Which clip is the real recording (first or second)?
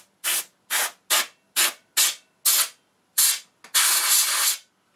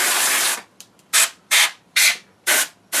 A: first